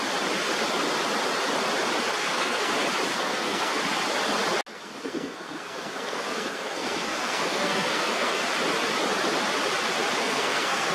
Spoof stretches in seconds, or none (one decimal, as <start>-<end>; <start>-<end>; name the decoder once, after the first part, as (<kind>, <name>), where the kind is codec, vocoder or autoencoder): 2.2-2.7 (codec, SNAC); 3.1-3.8; 4.7-8.4; 10.2-10.9